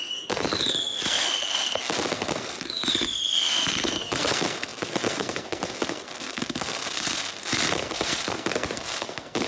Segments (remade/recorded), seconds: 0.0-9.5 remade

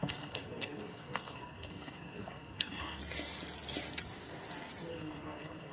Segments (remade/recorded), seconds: 0.0-3.0 remade; 3.0-4.9 recorded; 4.9-5.7 remade

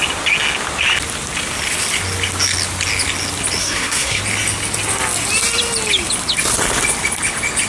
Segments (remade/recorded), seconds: 0.0-3.6 recorded; 3.6-4.2 remade; 4.2-7.7 recorded

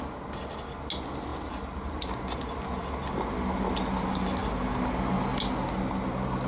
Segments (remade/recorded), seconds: 0.0-6.5 recorded

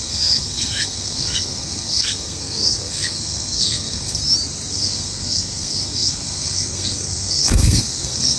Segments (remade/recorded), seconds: 0.0-4.2 remade; 4.2-4.7 recorded; 4.7-8.4 remade

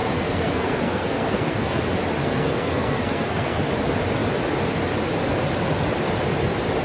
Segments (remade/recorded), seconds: 0.0-1.8 remade; 1.8-2.2 recorded; 2.2-3.6 remade; 3.6-6.8 recorded